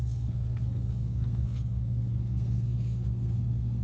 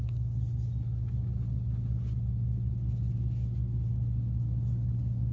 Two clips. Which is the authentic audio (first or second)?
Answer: second